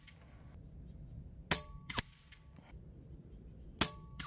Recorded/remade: recorded